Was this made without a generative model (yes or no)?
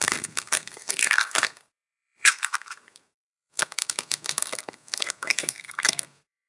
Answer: no